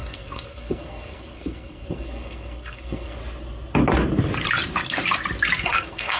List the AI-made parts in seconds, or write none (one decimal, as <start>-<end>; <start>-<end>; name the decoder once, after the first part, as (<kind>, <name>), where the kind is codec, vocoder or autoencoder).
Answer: 0.0-3.2 (codec, SNAC); 5.6-6.2